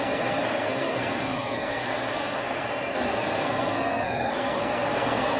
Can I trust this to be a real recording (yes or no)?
no